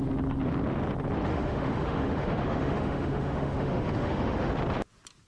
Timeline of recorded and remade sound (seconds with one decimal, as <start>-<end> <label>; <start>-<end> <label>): 0.0-1.3 recorded; 1.3-4.5 remade; 4.5-5.3 recorded